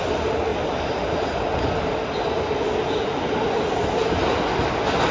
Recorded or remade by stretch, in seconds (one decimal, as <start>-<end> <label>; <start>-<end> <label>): 0.0-0.5 recorded; 0.5-1.9 remade; 1.9-5.1 recorded

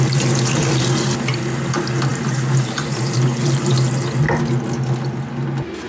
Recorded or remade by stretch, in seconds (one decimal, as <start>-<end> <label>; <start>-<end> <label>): 0.0-2.1 recorded; 2.1-3.7 remade; 3.7-5.9 recorded

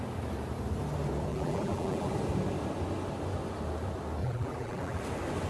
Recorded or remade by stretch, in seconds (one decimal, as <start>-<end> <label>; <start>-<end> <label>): 0.0-1.3 recorded; 1.3-2.1 remade; 2.1-4.2 recorded; 4.2-5.0 remade; 5.0-5.5 recorded